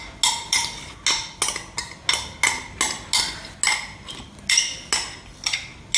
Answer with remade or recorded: recorded